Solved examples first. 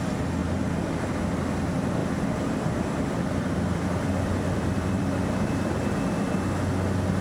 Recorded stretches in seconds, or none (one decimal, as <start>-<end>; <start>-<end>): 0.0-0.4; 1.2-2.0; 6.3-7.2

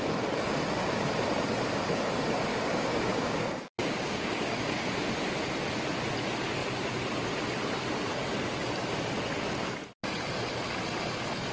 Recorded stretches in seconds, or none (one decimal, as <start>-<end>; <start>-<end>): 0.0-2.5; 4.9-11.5

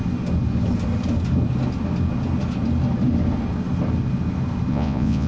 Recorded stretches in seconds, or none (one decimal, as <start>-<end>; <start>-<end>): 0.0-4.7